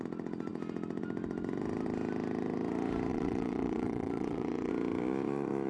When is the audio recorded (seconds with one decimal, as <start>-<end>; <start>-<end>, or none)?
0.0-3.1; 4.7-5.7